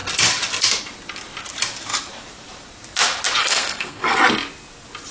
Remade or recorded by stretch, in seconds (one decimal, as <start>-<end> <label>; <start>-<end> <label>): 0.0-3.4 recorded; 3.4-4.2 remade; 4.2-5.1 recorded